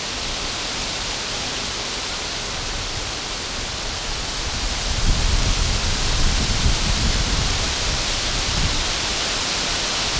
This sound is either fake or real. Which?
real